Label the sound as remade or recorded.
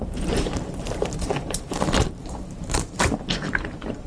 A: remade